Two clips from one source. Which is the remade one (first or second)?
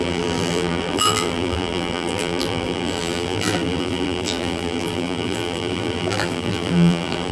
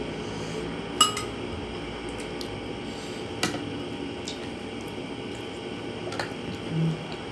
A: first